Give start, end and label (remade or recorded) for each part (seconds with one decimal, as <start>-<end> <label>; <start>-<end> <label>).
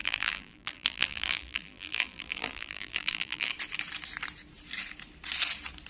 0.0-3.5 remade; 3.5-5.9 recorded